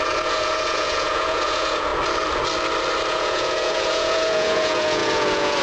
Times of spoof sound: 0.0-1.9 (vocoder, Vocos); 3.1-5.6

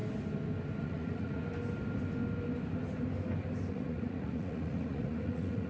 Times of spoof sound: 0.8-1.4 (vocoder, Vocos); 3.7-5.7

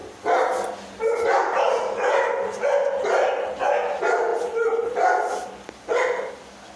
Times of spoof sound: 4.3-6.3 (vocoder, BigVGAN v2)

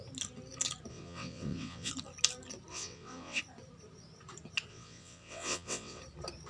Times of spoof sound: 0.9-1.9 (vocoder, WaveNeXt); 2.7-3.4; 4.7-6.0

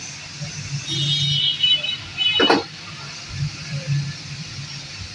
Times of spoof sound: 1.5-4.6 (vocoder, BigVGAN v2)